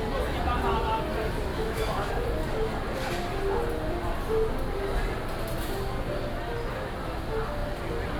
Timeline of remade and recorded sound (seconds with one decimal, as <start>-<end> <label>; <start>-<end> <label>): 0.0-1.5 recorded; 1.5-2.1 remade; 2.1-8.2 recorded